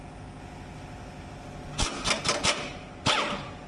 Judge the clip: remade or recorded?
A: recorded